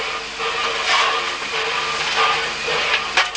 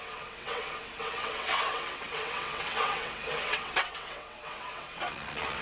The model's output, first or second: second